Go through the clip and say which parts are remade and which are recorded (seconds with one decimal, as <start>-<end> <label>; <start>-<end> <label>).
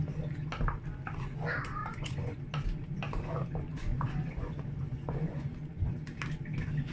0.0-1.8 recorded; 1.8-2.4 remade; 2.4-3.7 recorded; 3.7-6.0 remade; 6.0-6.9 recorded